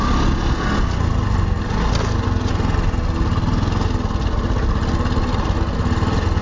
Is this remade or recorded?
recorded